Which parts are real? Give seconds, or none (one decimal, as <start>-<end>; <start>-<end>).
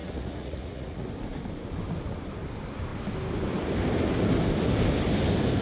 1.1-5.6